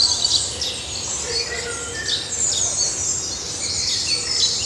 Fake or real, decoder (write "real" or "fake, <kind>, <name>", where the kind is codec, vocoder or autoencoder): real